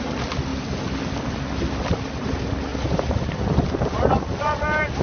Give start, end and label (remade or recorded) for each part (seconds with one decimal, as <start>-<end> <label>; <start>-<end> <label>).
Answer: 0.0-5.0 recorded